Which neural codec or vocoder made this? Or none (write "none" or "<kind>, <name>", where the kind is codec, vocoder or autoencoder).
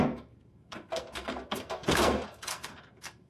codec, SNAC